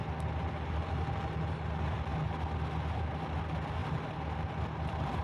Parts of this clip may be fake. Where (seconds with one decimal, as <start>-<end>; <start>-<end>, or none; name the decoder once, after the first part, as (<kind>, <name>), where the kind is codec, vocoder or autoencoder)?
3.8-5.2 (vocoder, BigVGAN v2)